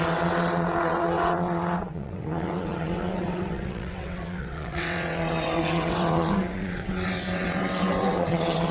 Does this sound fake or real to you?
fake